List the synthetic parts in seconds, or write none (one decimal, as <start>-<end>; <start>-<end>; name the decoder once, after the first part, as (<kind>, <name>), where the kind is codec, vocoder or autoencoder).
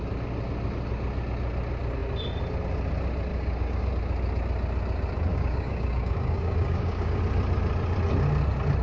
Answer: 3.3-3.9 (codec, DAC); 5.3-7.2